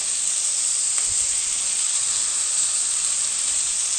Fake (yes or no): no